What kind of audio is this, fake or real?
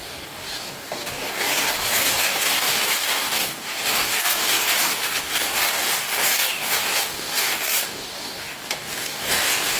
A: fake